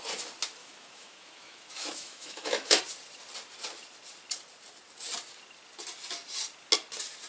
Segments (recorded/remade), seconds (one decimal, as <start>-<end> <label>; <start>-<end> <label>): 0.0-0.6 recorded; 0.6-2.8 remade; 2.8-7.3 recorded